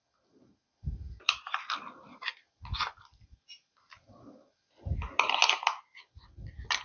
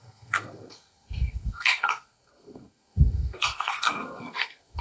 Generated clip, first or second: second